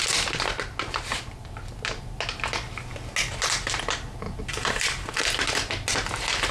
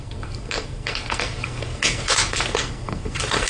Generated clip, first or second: second